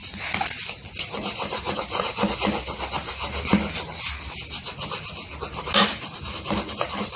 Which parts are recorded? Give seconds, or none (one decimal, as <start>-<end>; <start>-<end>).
0.0-7.2